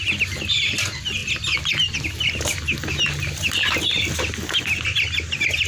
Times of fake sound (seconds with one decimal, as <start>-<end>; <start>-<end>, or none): none